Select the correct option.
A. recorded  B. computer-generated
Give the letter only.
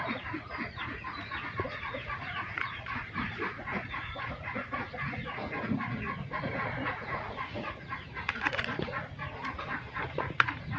B